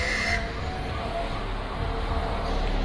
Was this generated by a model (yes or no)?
no